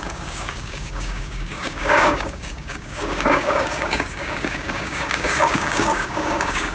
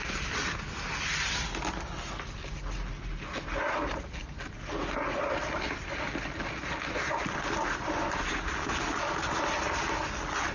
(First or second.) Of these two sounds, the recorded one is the second